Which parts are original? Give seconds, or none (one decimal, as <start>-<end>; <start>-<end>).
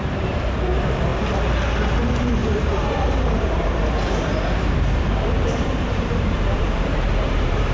1.1-2.0